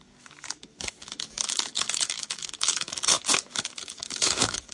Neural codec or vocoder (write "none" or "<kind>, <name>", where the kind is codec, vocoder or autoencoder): codec, DAC